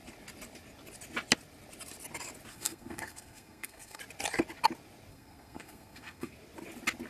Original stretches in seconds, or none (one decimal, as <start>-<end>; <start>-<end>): 0.0-2.5; 4.0-5.1; 6.3-7.1